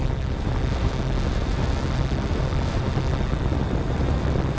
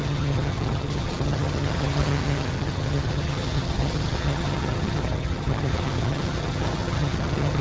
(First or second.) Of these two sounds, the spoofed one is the second